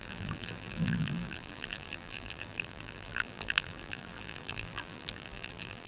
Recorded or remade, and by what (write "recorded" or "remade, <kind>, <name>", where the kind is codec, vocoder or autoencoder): remade, vocoder, BigVGAN v2